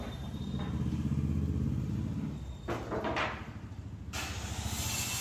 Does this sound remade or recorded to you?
recorded